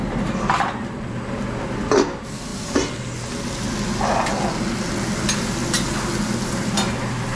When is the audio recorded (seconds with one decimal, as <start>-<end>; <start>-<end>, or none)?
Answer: 1.1-2.5; 3.0-7.4